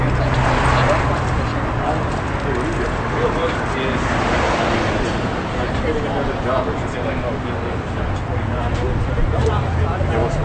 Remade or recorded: recorded